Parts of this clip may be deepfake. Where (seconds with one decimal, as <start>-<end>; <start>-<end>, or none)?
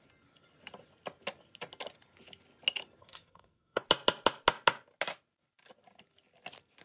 3.0-3.8